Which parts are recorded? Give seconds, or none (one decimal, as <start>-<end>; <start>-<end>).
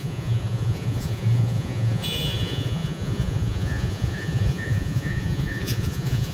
none